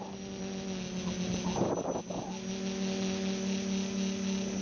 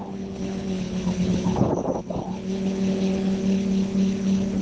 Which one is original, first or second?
first